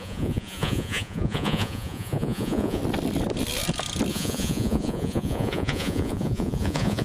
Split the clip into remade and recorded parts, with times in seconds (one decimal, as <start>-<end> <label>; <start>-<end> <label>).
0.0-2.8 remade; 2.8-4.1 recorded; 4.1-7.0 remade